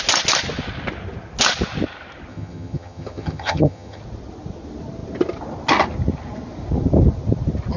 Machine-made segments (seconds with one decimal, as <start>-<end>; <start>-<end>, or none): 2.3-4.0